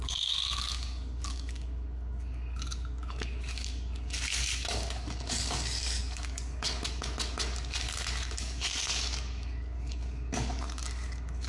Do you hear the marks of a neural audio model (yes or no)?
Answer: yes